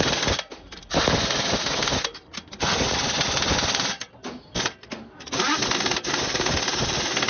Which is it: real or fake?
real